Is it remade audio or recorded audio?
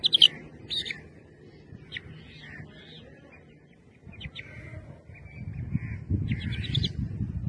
recorded